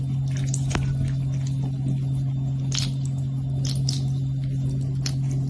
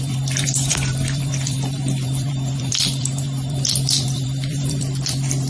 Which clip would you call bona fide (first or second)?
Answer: first